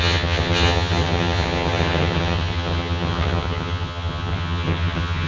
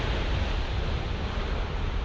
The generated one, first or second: first